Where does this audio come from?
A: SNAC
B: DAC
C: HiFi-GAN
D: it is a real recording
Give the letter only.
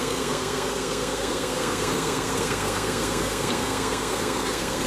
A